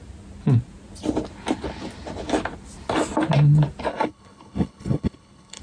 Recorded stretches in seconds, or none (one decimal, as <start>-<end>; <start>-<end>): 0.0-3.9